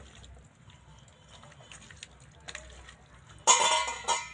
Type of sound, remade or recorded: recorded